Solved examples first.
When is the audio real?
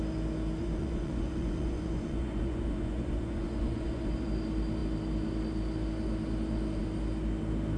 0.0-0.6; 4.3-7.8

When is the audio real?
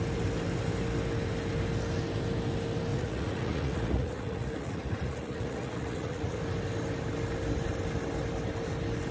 0.0-2.9; 6.4-9.1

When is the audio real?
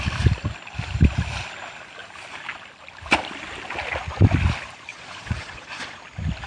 0.0-4.9; 6.0-6.5